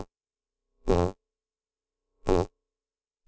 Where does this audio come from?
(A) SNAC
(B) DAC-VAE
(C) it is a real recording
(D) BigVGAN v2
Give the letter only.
D